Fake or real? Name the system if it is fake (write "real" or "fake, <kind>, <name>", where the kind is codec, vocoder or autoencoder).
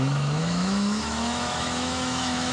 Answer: fake, autoencoder, DAC-VAE